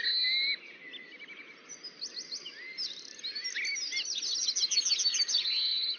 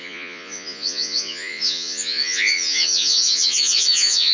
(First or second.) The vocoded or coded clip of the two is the second